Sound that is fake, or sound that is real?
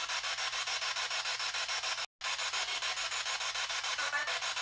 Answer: real